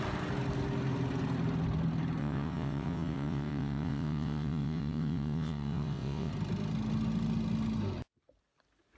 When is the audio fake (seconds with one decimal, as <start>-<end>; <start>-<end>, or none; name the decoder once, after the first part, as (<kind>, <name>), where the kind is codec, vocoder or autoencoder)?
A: 2.2-6.3 (vocoder, WaveNeXt)